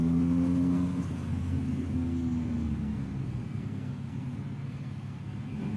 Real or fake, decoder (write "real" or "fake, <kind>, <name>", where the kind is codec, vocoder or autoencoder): fake, codec, SNAC